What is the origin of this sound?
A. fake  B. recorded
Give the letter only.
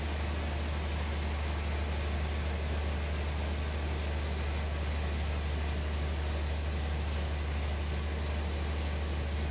B